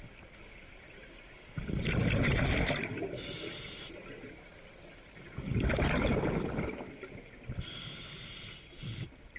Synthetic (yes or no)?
no